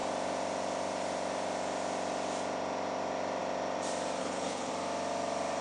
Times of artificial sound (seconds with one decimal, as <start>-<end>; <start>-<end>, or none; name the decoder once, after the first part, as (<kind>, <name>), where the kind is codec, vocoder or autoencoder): 4.2-4.7 (codec, HILCodec)